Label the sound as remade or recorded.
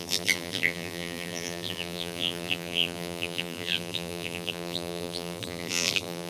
remade